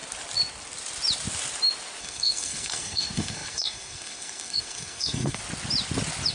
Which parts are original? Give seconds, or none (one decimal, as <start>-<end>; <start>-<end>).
0.0-2.0; 5.4-6.3